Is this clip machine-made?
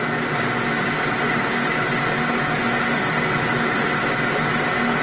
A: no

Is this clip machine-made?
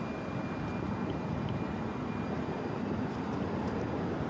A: no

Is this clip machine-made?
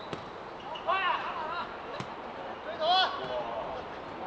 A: no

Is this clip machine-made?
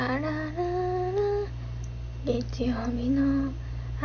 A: no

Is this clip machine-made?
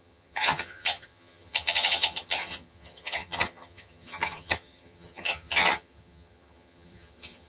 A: yes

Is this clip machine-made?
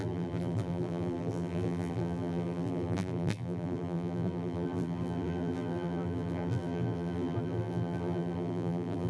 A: yes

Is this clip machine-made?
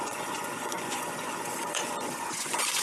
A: yes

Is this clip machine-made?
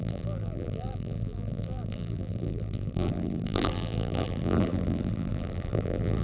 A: yes